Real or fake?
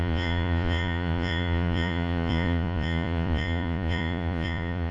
fake